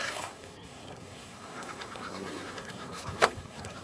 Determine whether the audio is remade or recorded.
remade